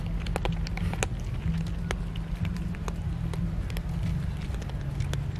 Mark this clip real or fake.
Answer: real